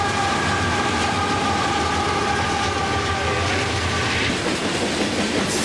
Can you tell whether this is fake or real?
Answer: real